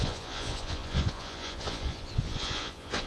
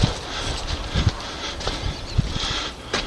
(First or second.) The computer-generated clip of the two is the first